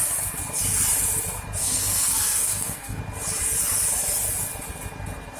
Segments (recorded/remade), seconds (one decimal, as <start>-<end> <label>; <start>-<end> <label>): 0.0-1.6 recorded; 1.6-3.0 remade; 3.0-5.4 recorded